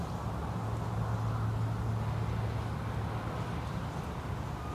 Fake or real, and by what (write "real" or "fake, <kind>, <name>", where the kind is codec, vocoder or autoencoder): real